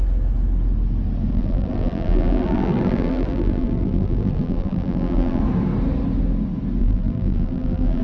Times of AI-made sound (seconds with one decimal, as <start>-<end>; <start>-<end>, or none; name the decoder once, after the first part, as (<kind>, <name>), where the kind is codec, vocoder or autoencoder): 1.3-5.4 (vocoder, BigVGAN v2); 6.8-8.0